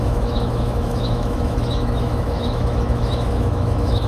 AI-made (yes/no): yes